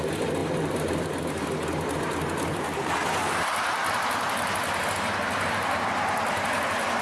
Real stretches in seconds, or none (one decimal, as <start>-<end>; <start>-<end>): 0.0-2.5; 4.9-7.0